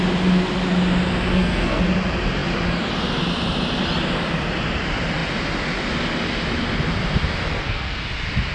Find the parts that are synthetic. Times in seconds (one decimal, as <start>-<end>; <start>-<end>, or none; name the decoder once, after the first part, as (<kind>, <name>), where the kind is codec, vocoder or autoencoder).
1.3-1.8 (codec, SNAC); 7.5-8.0